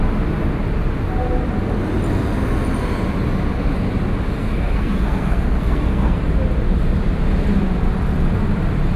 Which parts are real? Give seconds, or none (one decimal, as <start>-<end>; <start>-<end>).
0.0-4.4; 6.2-9.0